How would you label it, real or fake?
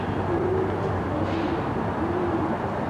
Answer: real